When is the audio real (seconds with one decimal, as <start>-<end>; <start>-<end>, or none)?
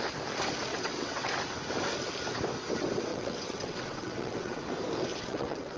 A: 0.0-0.7; 1.3-3.1; 4.6-5.1